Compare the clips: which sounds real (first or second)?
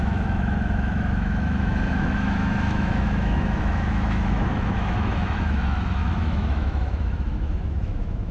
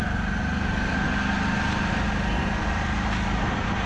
second